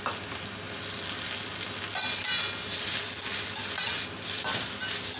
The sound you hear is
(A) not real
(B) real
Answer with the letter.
B